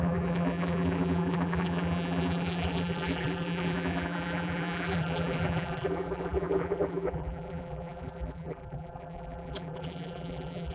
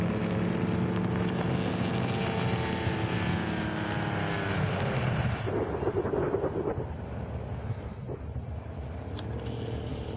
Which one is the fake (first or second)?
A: first